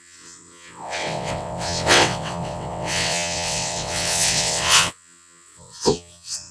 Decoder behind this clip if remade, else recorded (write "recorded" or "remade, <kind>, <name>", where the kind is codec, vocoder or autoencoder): remade, vocoder, WaveNeXt